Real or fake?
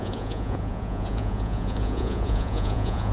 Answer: fake